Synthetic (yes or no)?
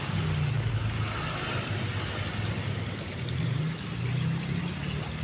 no